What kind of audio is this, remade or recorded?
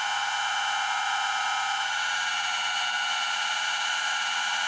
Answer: recorded